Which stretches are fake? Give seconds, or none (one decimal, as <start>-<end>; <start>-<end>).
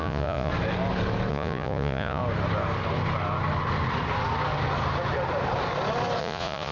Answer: 0.0-0.5; 1.3-2.2; 6.2-6.7